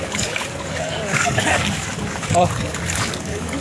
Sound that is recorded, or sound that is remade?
remade